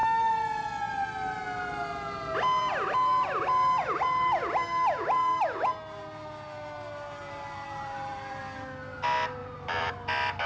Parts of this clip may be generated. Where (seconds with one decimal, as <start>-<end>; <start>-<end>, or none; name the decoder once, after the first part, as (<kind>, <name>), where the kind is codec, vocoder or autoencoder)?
7.2-8.4 (vocoder, BigVGAN v2); 9.4-9.9